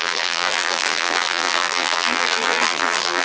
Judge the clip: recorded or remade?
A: remade